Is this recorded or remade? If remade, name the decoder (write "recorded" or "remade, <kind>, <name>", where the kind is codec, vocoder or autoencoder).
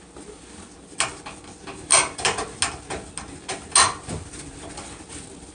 recorded